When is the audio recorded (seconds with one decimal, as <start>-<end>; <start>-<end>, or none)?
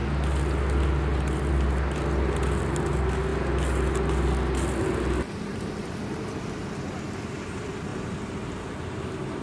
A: 0.0-9.4